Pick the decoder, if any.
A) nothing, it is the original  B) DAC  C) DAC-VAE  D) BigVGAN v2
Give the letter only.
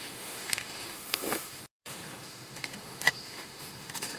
C